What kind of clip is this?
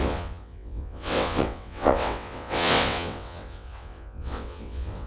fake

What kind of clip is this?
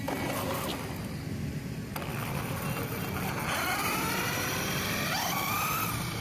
real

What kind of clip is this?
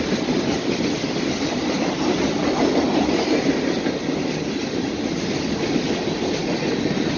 real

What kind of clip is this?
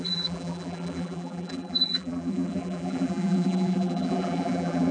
fake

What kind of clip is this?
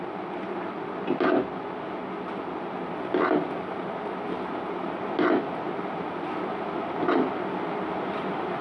real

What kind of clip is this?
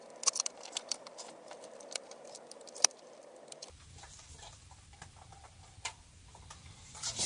fake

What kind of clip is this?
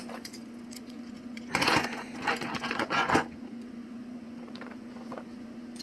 fake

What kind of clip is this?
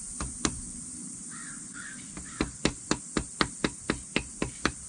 fake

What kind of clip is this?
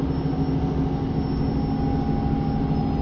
real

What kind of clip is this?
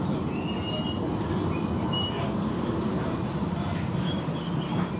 real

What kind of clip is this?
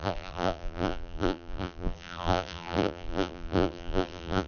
fake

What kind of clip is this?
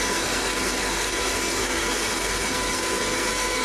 fake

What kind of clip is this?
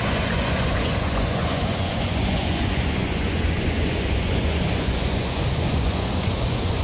fake